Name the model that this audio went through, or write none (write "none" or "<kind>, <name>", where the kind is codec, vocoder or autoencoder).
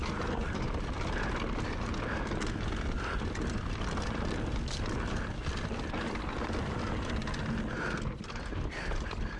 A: none